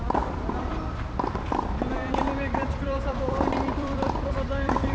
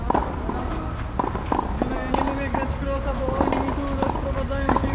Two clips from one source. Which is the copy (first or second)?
first